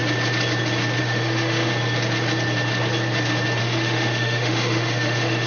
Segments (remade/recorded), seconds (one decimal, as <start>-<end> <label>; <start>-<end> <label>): 0.0-1.0 recorded; 1.0-1.7 remade; 1.7-3.6 recorded; 3.6-5.5 remade